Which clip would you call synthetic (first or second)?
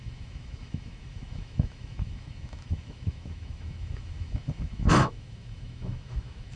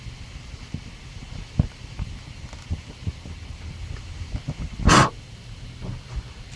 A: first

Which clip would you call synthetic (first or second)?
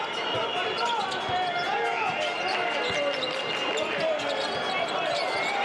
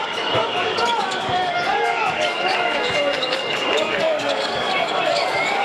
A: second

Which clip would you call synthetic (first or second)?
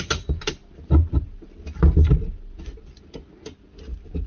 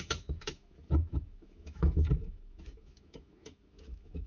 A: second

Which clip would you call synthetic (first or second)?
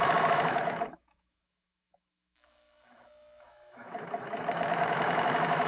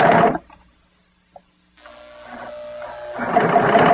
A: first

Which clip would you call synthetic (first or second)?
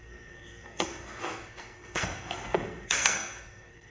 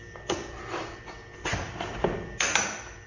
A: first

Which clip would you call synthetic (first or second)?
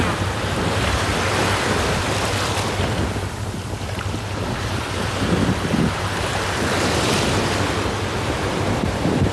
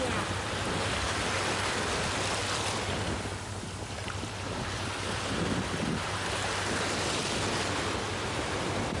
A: first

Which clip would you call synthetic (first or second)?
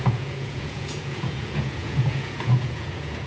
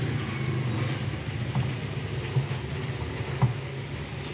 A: first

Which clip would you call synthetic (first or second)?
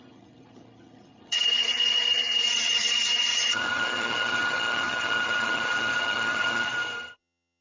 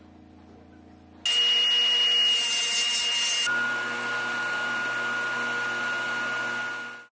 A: first